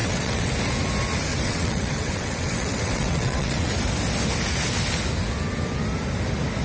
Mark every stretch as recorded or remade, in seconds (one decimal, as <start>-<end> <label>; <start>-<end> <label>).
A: 0.0-0.5 remade; 0.5-1.3 recorded; 1.3-3.7 remade; 3.7-6.6 recorded